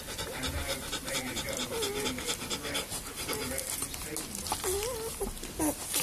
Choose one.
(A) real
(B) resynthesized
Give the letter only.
A